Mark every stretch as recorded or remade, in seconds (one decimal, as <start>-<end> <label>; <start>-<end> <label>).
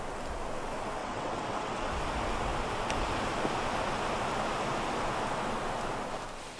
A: 0.0-1.0 recorded; 1.0-1.9 remade; 1.9-6.6 recorded